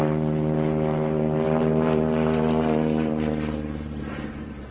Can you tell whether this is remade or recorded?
remade